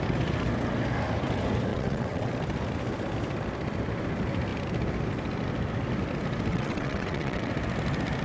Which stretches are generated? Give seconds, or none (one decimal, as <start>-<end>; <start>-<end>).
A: 1.7-2.3; 6.5-7.5